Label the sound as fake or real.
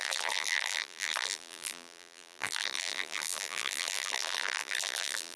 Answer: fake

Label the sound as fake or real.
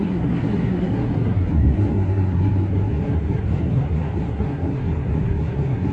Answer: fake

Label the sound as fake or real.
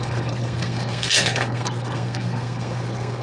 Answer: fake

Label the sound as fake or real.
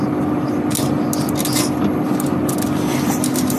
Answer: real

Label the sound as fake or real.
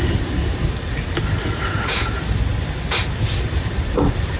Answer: real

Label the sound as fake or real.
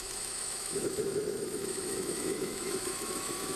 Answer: fake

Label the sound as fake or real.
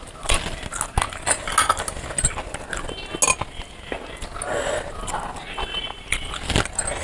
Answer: real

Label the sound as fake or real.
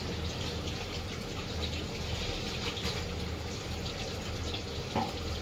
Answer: real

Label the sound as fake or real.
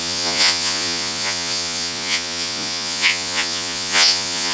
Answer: fake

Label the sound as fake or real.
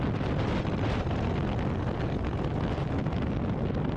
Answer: real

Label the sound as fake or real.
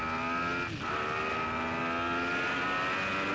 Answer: real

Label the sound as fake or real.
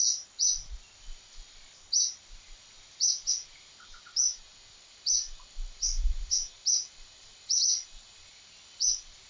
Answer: real